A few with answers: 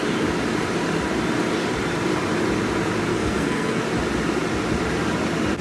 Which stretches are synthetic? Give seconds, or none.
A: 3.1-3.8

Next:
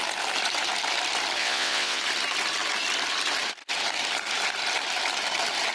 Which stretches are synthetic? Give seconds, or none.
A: 1.4-2.0

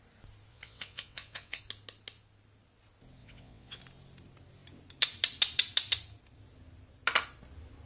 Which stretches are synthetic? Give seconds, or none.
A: 0.5-1.6; 3.2-3.8